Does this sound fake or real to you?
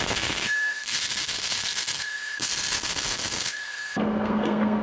fake